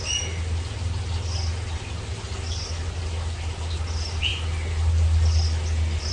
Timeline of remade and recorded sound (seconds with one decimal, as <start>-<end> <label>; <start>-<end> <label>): 0.0-6.1 recorded